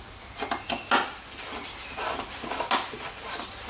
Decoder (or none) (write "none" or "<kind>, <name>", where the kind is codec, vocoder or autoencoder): none